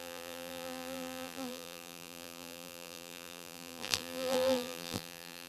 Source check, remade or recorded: remade